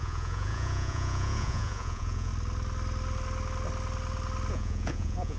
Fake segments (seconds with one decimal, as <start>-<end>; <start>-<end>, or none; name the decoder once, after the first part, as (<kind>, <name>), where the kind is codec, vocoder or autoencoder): 0.0-2.3 (vocoder, Vocos); 4.5-5.4